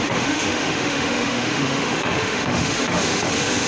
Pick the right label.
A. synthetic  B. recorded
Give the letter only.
A